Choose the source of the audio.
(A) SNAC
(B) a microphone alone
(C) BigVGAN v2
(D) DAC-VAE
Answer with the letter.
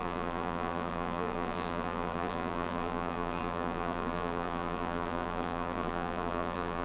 C